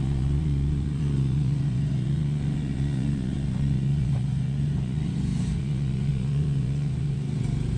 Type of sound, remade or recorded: remade